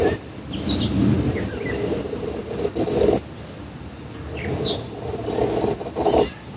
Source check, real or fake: real